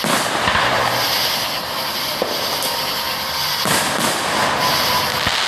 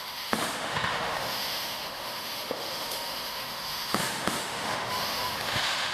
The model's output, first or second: second